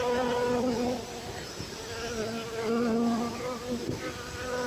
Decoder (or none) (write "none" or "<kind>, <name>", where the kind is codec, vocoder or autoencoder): none